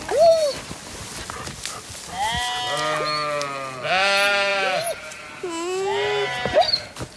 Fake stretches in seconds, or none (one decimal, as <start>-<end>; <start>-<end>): none